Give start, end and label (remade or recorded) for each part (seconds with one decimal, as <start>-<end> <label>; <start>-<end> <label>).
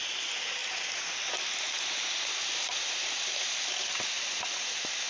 0.0-5.1 recorded